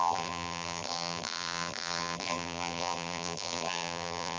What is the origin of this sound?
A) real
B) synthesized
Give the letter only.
B